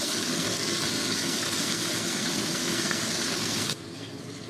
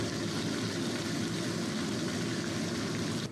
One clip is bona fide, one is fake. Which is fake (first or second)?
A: first